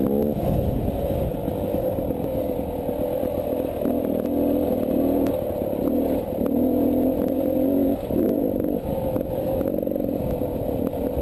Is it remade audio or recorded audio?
recorded